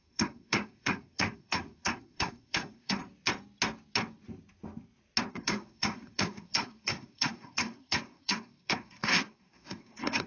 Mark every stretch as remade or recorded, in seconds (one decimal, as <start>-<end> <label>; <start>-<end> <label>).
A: 0.0-3.0 remade; 3.0-5.3 recorded; 5.3-10.3 remade